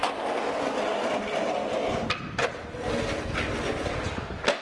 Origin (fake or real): real